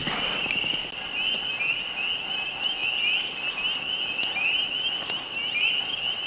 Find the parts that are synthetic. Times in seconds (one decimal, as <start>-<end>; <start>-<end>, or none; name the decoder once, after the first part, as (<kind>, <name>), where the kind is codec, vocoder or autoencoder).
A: none